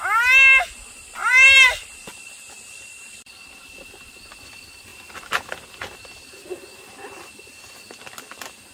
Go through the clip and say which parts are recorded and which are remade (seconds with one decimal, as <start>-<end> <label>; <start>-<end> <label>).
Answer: 0.0-1.2 recorded; 1.2-4.1 remade; 4.1-8.7 recorded

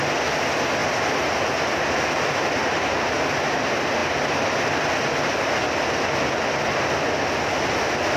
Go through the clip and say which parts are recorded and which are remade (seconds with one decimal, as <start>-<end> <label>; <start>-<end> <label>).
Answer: 0.0-0.8 recorded; 0.8-1.4 remade; 1.4-8.2 recorded

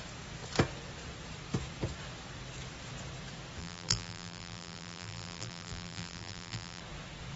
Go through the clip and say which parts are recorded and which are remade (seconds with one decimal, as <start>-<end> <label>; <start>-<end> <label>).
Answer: 0.0-3.6 recorded; 3.6-6.8 remade; 6.8-7.4 recorded

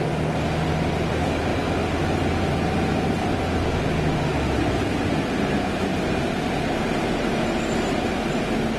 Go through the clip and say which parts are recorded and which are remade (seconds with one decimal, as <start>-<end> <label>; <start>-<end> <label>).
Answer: 0.0-8.8 recorded

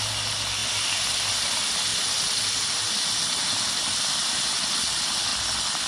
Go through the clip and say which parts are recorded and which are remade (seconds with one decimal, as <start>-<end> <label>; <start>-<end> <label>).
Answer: 0.0-5.3 recorded; 5.3-5.9 remade